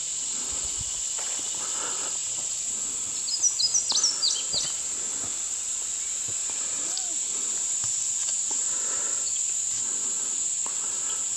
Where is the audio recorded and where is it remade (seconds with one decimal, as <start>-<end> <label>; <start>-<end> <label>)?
0.0-6.4 recorded; 6.4-8.1 remade; 8.1-8.5 recorded; 8.5-9.0 remade; 9.0-11.4 recorded